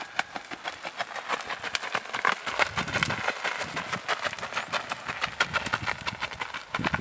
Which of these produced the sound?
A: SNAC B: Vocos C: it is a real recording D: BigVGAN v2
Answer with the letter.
C